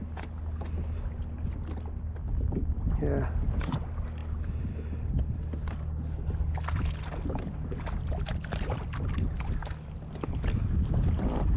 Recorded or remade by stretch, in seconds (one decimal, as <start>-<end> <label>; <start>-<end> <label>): 0.0-11.6 recorded